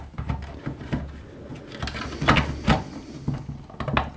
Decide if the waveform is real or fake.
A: real